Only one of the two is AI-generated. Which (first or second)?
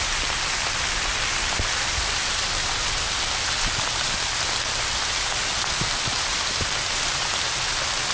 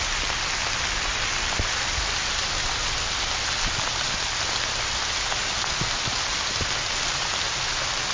first